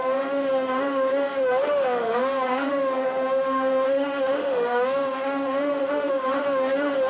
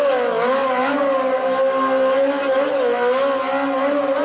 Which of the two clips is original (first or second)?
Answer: second